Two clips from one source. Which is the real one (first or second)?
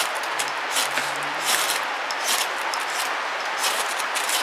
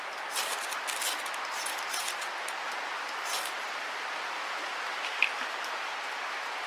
second